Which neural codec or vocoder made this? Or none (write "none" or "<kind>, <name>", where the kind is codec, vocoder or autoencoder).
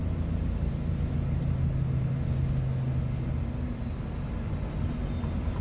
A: none